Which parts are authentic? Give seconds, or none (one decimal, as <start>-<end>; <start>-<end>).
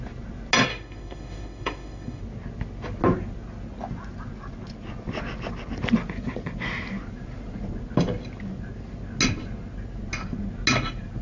0.0-0.7; 2.2-11.2